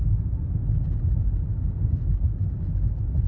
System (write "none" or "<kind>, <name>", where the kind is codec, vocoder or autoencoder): none